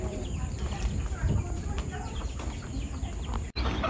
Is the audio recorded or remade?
remade